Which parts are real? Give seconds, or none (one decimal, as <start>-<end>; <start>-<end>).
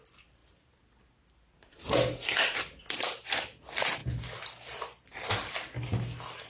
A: 0.0-6.5